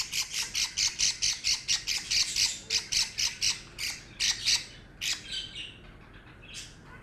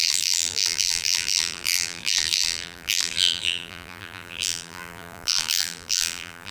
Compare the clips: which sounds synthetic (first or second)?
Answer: second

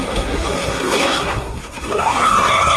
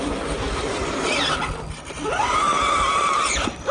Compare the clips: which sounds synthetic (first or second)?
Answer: first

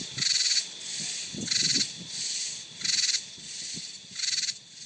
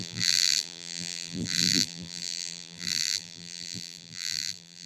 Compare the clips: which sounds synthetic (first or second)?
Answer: second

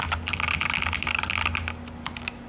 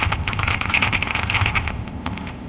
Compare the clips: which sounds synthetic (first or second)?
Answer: second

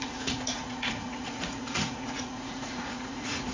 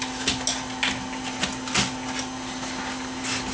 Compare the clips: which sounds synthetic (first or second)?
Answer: first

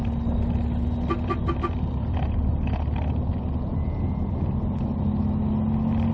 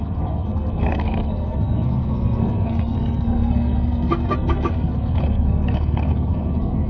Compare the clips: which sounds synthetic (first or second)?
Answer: second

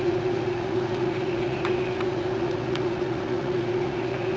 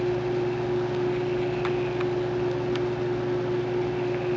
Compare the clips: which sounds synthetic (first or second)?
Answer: first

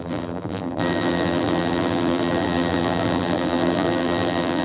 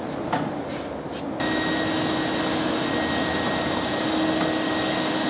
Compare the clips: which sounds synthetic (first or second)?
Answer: first